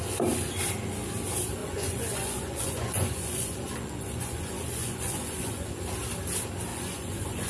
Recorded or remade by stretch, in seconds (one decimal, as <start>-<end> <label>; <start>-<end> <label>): 0.0-1.6 recorded; 1.6-5.7 remade; 5.7-6.7 recorded; 6.7-7.5 remade

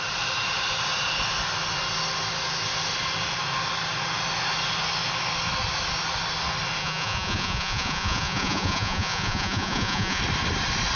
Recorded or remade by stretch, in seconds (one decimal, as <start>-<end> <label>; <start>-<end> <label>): 0.0-6.8 recorded; 6.8-10.2 remade; 10.2-11.0 recorded